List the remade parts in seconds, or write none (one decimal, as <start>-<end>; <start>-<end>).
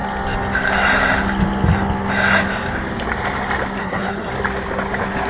3.8-4.3